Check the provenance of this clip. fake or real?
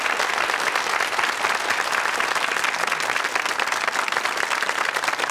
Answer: real